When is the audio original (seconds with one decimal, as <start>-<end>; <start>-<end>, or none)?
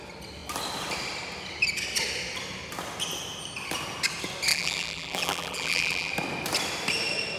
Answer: 0.0-4.5; 6.1-7.4